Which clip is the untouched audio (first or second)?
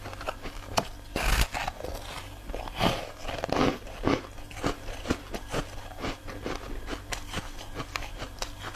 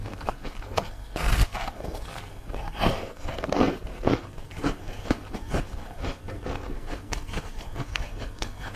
first